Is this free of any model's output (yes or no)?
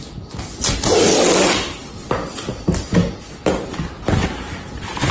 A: yes